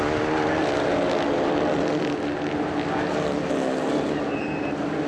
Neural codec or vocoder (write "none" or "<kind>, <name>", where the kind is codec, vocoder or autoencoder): none